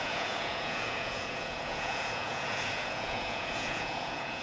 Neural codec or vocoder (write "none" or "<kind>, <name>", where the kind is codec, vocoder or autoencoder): vocoder, Vocos